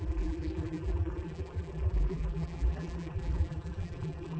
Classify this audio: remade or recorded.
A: remade